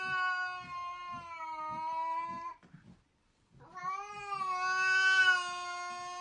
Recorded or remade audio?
recorded